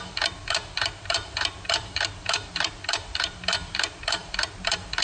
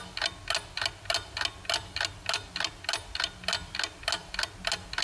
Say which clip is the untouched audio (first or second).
second